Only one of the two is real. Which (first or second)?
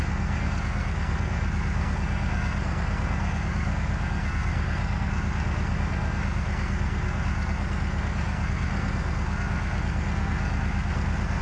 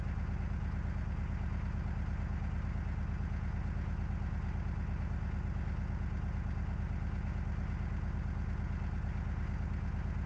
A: second